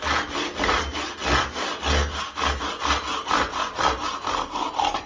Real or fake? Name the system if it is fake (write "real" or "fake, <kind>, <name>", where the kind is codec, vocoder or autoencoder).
real